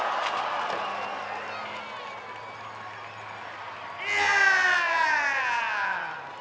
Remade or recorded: recorded